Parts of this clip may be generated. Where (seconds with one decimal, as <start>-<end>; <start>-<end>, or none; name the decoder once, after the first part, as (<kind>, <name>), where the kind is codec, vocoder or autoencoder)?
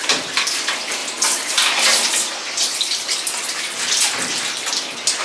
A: none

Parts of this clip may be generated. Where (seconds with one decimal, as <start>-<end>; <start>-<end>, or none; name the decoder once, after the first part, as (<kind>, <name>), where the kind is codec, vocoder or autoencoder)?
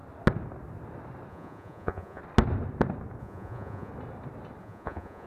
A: 1.3-2.2 (vocoder, Vocos); 3.2-3.9; 4.6-5.3